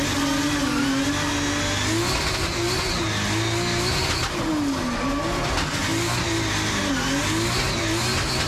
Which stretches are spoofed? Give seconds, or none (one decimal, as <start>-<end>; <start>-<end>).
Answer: none